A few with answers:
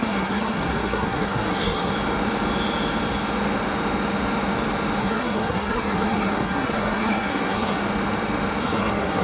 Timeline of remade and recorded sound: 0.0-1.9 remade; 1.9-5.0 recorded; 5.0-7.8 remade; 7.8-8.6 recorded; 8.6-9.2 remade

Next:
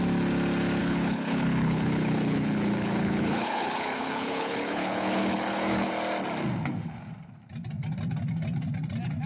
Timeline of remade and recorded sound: 0.0-0.8 recorded; 0.8-5.9 remade; 5.9-9.3 recorded

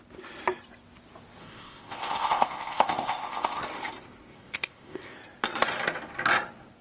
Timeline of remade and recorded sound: 0.0-1.4 recorded; 1.4-3.6 remade; 3.6-4.3 recorded; 4.3-5.2 remade; 5.2-6.8 recorded

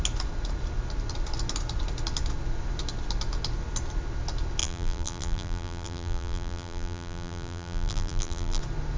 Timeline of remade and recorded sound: 0.0-4.6 recorded; 4.6-8.6 remade; 8.6-9.0 recorded

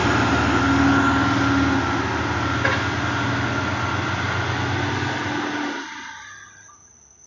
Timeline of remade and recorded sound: 0.0-7.3 recorded

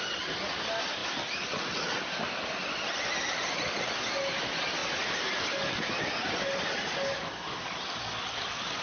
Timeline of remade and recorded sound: 0.0-8.8 recorded

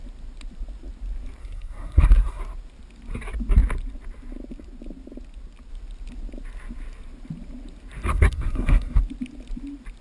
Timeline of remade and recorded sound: 0.0-1.4 recorded; 1.4-2.4 remade; 2.4-8.1 recorded; 8.1-9.0 remade; 9.0-10.0 recorded